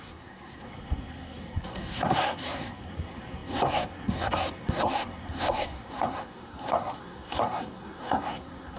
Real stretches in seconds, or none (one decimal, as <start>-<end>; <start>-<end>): none

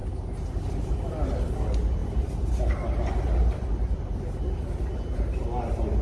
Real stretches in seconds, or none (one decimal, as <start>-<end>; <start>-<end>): 0.0-6.0

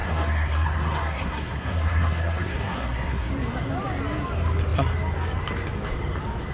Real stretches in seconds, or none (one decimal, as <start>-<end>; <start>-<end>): 3.3-6.5

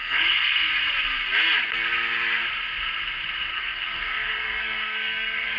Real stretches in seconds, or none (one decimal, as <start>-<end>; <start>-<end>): 0.7-3.5

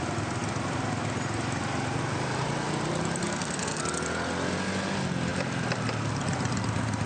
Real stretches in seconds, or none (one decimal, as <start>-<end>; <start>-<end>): 0.0-3.2; 3.8-7.1